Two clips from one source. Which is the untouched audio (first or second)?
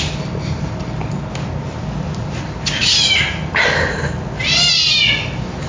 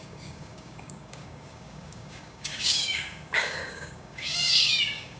first